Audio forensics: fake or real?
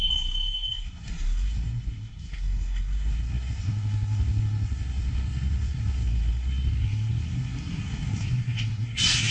fake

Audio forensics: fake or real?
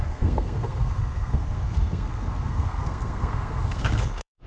fake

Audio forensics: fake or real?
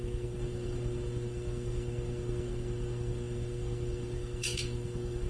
fake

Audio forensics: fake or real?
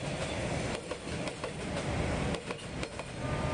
real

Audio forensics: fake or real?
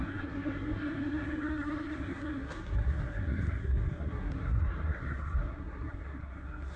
fake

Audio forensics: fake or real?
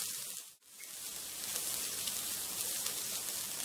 real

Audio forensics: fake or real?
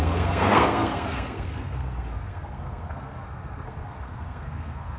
fake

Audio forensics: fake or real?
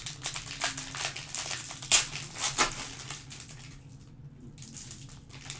real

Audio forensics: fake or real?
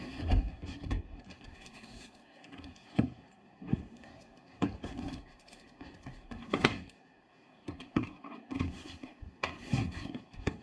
fake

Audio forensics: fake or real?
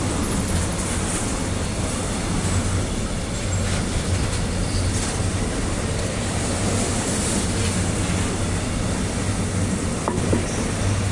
real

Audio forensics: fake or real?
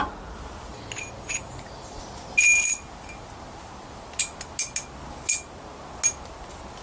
real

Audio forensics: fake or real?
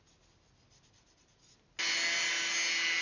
real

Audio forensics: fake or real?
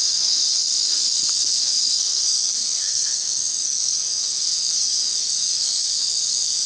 fake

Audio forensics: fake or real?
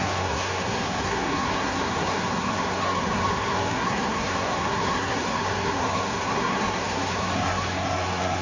fake